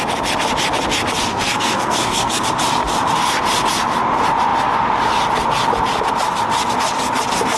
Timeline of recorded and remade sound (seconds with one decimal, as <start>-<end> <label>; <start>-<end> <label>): 0.0-1.3 recorded; 1.3-2.4 remade; 2.4-7.6 recorded